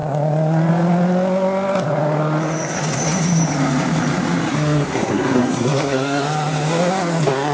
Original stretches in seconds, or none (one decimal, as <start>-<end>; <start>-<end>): 0.0-4.5; 6.2-7.5

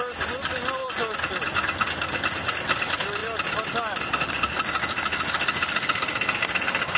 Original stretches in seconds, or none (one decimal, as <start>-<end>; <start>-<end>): 0.0-7.0

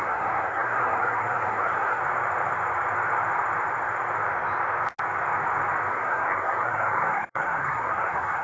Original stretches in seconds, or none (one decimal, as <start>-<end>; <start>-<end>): 2.0-5.9

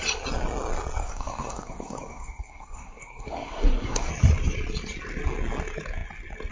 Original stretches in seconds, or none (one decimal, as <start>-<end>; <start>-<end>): 0.0-1.0; 4.1-6.5

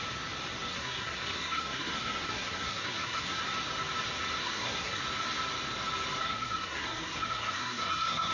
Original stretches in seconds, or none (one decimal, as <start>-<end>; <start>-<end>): 0.0-0.7; 3.4-4.4; 5.0-6.2

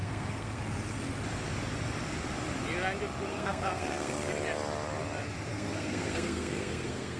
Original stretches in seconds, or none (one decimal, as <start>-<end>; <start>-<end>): 0.6-3.3; 4.3-5.5